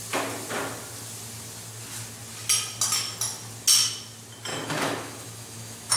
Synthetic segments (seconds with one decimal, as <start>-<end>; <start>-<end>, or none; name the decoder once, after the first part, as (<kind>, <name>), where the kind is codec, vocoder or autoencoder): 4.5-6.0 (autoencoder, DAC-VAE)